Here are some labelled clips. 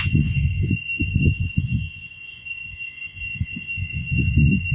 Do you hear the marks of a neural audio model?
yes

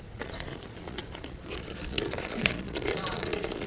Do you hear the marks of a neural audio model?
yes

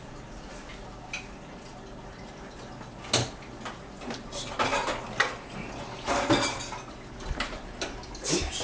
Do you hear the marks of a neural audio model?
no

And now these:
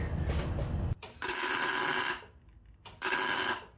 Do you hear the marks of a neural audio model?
no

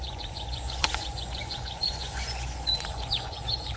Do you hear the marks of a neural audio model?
yes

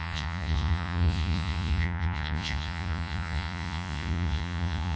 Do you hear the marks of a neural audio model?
yes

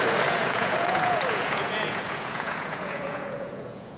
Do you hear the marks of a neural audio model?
yes